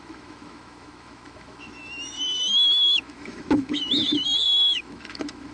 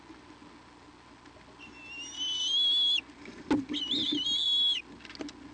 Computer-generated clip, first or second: first